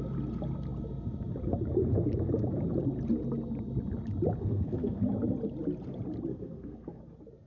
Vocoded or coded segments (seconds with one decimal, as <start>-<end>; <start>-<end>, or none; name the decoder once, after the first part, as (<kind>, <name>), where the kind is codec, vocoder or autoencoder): 4.4-5.0 (codec, SNAC); 6.3-7.0